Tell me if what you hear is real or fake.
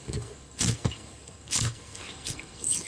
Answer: fake